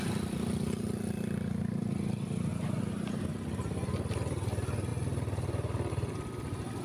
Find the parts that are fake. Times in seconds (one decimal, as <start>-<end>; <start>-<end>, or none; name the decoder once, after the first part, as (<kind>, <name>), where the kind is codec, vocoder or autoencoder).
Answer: 2.5-3.2 (vocoder, BigVGAN v2)